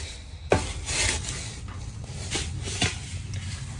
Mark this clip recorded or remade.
recorded